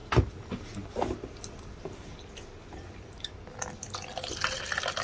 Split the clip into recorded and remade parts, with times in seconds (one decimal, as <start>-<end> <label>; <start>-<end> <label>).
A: 0.0-5.0 recorded